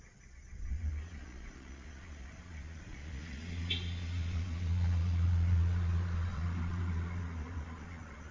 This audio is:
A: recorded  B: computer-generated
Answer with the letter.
B